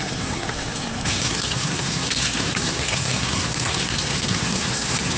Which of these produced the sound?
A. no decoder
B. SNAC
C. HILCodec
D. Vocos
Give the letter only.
B